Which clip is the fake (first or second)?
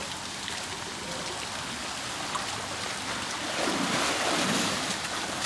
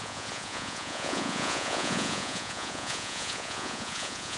second